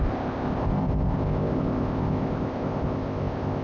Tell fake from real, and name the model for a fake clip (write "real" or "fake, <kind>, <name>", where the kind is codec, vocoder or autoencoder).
fake, codec, ZipCodec